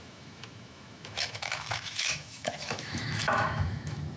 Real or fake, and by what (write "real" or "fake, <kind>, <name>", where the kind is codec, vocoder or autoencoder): fake, autoencoder, DAC-VAE